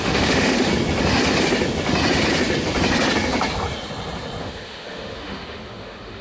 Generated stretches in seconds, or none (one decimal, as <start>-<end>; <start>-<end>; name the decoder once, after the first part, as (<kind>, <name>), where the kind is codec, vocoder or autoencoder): 0.0-0.7 (autoencoder, DAC-VAE); 4.4-6.2